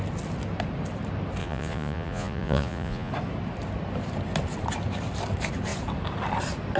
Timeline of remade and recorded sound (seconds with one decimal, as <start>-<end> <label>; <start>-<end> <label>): 0.0-1.4 recorded; 1.4-3.1 remade; 3.1-6.8 recorded